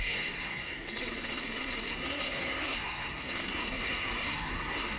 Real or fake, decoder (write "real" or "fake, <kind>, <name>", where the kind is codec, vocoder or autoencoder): fake, codec, SNAC